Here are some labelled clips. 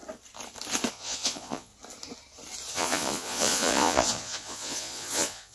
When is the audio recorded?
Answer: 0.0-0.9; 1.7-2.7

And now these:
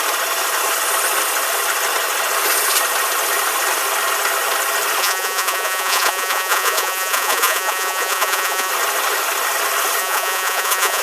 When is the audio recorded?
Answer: 0.0-5.0; 8.7-10.0

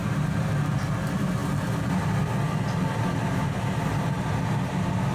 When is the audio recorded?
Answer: 0.0-5.1

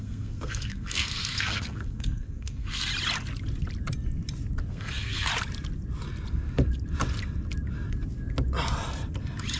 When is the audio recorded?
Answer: 2.9-4.7; 5.3-9.6

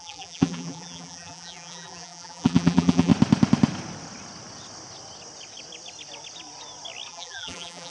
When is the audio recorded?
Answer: 3.1-7.1

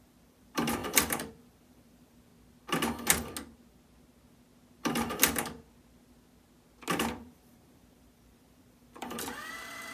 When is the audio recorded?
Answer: 2.3-6.9

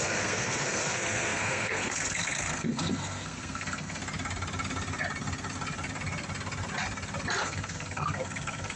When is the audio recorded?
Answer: 4.0-7.4

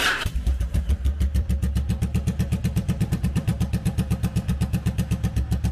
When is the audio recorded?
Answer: 0.5-1.2; 3.5-5.7